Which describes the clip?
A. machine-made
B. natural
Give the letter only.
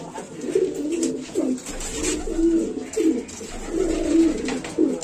B